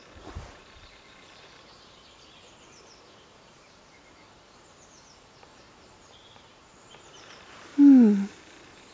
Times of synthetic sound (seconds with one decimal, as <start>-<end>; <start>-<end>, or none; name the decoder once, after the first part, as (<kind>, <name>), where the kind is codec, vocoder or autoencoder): 0.0-7.7 (vocoder, BigVGAN v2); 8.3-8.9

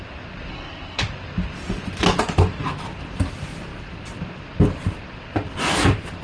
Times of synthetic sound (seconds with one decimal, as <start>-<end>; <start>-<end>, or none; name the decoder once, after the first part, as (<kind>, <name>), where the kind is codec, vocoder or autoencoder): 0.5-1.0 (codec, SNAC)

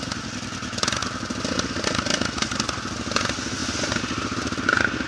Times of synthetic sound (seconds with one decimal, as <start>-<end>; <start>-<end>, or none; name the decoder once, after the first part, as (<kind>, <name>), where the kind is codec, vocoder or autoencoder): none

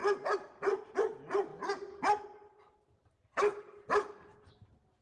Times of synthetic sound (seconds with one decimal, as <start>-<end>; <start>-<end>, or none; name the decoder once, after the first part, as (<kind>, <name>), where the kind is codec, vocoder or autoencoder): none

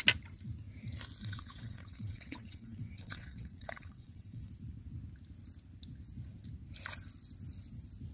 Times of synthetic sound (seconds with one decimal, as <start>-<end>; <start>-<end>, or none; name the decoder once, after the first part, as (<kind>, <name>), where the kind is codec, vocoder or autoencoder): 1.2-4.5 (vocoder, WaveNeXt)

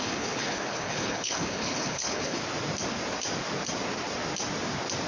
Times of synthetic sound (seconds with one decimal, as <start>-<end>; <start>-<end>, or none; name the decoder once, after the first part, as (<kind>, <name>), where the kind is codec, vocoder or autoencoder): 0.0-2.4 (codec, HILCodec)

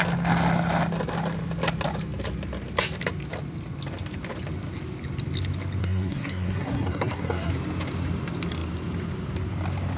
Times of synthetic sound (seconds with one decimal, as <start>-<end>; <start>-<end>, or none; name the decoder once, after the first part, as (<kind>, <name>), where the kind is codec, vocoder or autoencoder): 5.8-7.5 (codec, SNAC)

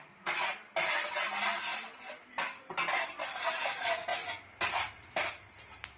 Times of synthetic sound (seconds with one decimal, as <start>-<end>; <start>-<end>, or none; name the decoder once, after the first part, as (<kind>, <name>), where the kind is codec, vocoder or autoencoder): none